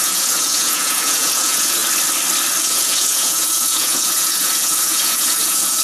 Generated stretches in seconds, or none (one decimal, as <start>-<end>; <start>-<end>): 0.0-1.8; 2.6-5.8